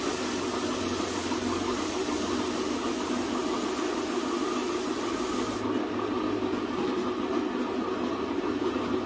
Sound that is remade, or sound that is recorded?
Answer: recorded